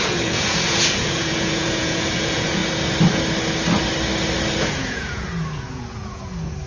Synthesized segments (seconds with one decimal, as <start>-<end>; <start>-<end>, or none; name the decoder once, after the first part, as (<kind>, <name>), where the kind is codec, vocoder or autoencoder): 0.0-2.6 (vocoder, Vocos); 4.6-6.7